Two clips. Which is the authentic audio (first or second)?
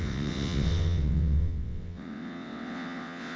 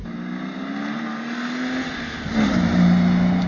second